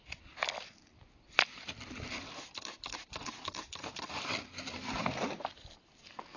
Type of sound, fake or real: real